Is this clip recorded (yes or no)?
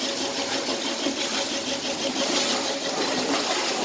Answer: yes